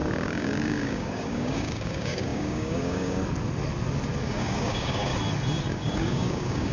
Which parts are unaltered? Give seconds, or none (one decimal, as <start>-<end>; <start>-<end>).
3.2-4.2; 5.1-5.7